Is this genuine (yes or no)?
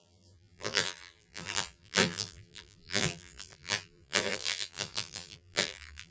no